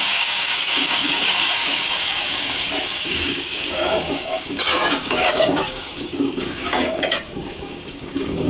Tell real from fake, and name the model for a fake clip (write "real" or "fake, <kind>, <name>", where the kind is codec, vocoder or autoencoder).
fake, codec, DAC